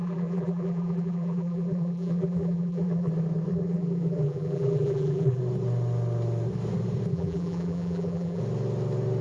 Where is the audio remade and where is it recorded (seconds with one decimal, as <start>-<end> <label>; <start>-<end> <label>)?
0.0-3.1 remade; 3.1-3.5 recorded; 3.5-5.4 remade; 5.4-7.1 recorded; 7.1-8.4 remade; 8.4-9.2 recorded